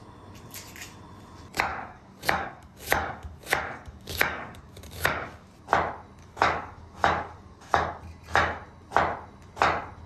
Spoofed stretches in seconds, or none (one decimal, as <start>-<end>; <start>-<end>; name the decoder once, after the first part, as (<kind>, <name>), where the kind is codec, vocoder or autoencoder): 1.7-5.5 (codec, DAC); 6.2-8.0